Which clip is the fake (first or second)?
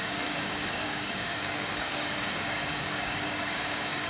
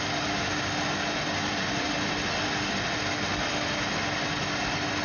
first